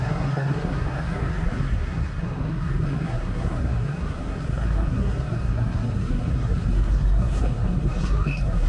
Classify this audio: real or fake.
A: fake